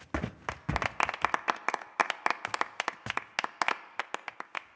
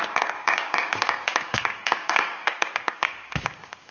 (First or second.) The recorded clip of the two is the first